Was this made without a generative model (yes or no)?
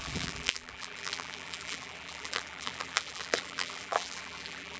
no